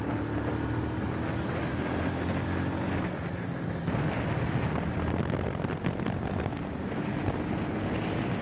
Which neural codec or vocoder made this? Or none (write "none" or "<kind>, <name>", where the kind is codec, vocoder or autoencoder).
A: none